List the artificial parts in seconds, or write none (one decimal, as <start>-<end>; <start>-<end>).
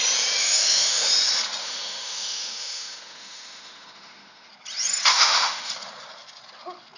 0.4-1.1; 1.6-4.5; 5.1-5.7